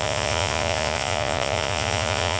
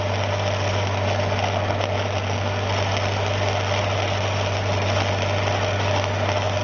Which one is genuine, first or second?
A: second